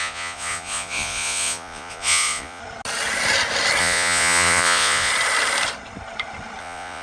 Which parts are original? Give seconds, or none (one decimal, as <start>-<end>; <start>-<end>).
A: 2.6-3.8; 5.1-6.6